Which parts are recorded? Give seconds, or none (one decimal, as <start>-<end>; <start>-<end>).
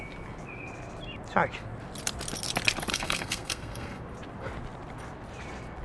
0.0-2.9; 4.0-5.8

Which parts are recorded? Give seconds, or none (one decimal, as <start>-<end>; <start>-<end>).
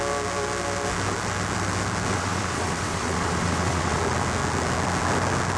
0.0-2.1; 4.0-5.6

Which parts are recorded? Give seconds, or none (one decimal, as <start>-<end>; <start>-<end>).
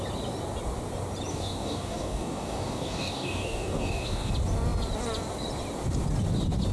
0.0-1.3; 4.3-6.7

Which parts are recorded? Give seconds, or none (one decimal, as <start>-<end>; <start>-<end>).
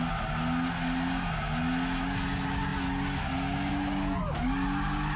0.0-5.2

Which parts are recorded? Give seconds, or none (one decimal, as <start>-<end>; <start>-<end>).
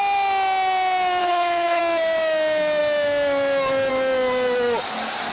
0.0-1.2; 1.8-5.3